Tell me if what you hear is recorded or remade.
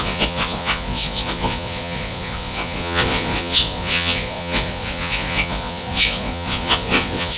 remade